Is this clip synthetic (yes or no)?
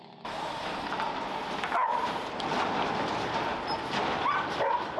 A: no